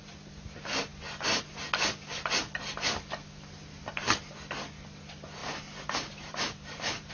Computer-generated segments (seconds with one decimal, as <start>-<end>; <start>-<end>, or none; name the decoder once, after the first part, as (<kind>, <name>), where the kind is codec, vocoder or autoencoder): 5.4-7.1 (vocoder, BigVGAN v2)